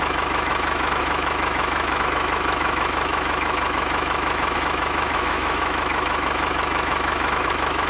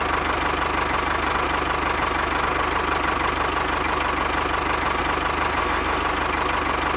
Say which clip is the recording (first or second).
second